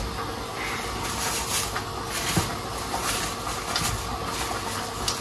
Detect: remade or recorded recorded